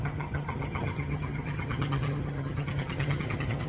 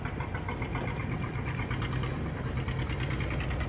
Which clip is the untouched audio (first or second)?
second